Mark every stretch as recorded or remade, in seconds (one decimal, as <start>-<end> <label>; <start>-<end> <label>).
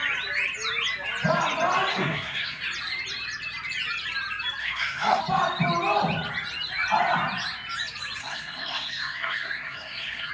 0.0-1.9 recorded; 1.9-2.6 remade; 2.6-4.6 recorded; 4.6-5.2 remade; 5.2-8.2 recorded; 8.2-10.3 remade